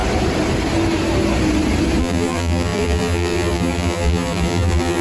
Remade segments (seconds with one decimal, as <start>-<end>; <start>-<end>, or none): 2.0-5.0

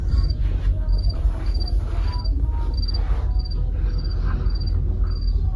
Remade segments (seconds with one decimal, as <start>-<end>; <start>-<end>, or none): 0.0-1.4

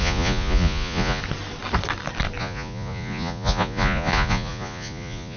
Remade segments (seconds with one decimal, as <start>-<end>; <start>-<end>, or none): 0.0-1.2; 2.4-5.4

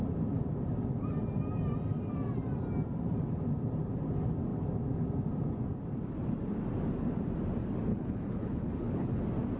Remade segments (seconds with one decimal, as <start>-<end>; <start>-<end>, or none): 7.9-9.2

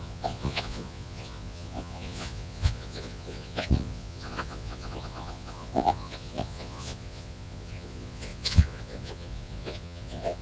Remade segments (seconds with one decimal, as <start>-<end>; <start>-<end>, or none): 0.0-10.4

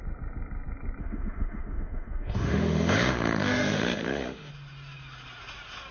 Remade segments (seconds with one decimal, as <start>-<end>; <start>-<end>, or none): 1.0-4.5

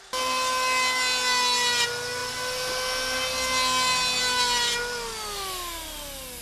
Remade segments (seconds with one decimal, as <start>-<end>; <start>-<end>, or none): none

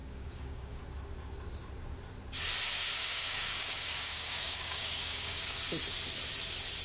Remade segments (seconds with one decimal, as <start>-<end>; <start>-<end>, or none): 0.0-0.8; 3.0-5.6